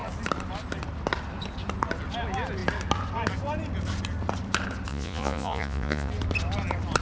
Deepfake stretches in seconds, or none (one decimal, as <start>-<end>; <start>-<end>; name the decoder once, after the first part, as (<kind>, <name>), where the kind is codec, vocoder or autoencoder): 4.9-6.1 (vocoder, Vocos)